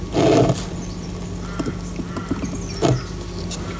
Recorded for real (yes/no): yes